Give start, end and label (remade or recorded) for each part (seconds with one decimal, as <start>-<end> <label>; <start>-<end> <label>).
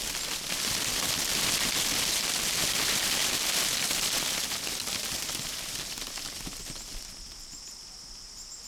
0.0-8.7 recorded